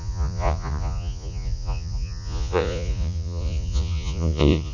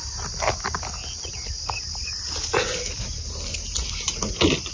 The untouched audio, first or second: second